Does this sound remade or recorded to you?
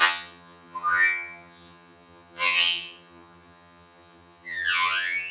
remade